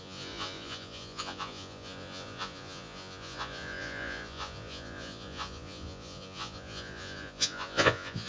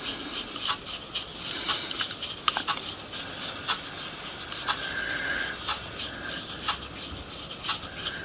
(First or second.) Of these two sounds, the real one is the second